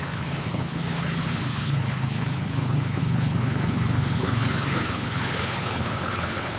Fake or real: fake